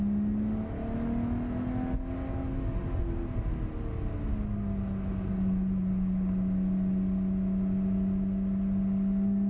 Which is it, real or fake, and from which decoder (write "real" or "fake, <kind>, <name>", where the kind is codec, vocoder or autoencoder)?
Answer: real